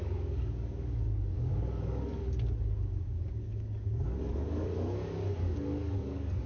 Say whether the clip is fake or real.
fake